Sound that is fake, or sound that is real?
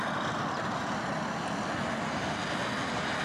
real